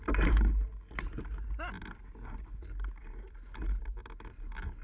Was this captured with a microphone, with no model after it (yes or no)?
yes